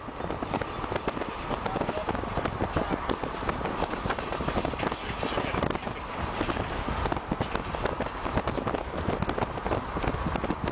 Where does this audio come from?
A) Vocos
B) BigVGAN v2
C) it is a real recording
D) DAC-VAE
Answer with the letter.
C